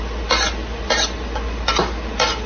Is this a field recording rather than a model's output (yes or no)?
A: yes